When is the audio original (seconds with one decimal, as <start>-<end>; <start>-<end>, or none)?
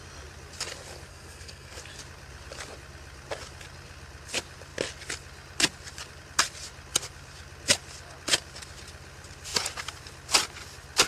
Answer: 0.0-1.1; 1.8-11.1